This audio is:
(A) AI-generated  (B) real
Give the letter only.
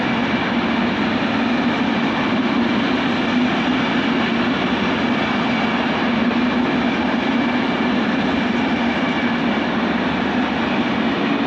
B